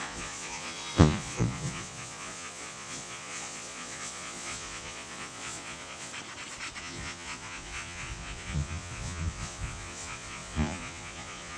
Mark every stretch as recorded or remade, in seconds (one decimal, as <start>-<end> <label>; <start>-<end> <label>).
0.0-6.1 remade; 6.1-6.8 recorded; 6.8-11.6 remade